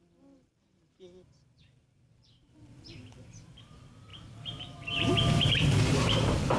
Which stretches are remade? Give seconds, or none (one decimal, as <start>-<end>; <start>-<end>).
0.0-6.6